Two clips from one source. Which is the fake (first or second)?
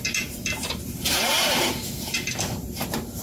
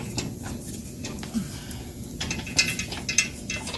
first